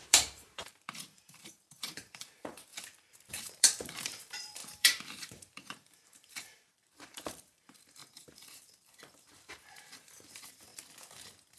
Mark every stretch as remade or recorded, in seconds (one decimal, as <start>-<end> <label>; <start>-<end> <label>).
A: 0.0-2.7 remade; 2.7-3.3 recorded; 3.3-10.7 remade; 10.7-11.6 recorded